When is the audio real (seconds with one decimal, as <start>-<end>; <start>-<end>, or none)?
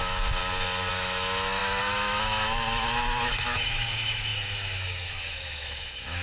0.4-0.9